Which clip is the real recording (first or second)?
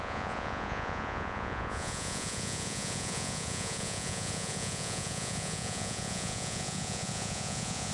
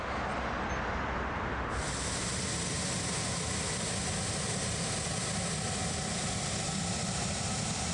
second